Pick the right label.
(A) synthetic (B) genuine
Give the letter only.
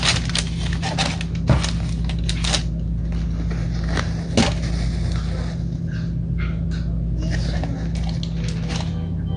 B